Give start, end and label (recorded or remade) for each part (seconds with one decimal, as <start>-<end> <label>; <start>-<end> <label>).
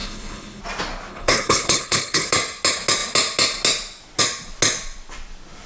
0.0-0.6 remade; 0.6-1.1 recorded; 1.1-2.3 remade; 2.3-5.7 recorded